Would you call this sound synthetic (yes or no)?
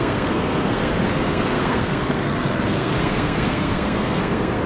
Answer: yes